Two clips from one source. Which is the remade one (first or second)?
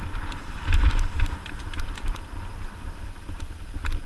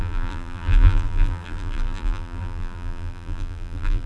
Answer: second